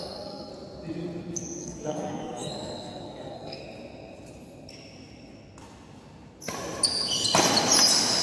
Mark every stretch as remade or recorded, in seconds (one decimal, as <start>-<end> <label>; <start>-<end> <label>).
0.0-0.5 remade; 0.5-1.6 recorded; 1.6-3.6 remade; 3.6-8.2 recorded